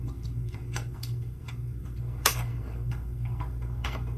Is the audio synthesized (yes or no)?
yes